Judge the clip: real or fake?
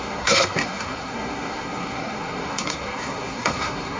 fake